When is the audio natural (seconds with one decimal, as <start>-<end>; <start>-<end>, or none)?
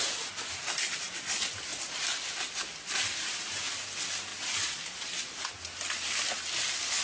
0.0-7.0